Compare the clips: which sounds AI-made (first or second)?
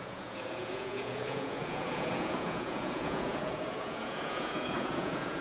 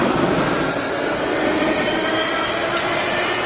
first